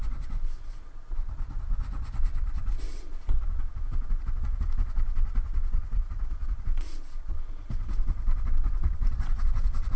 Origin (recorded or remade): remade